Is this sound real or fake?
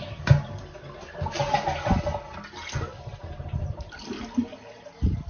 real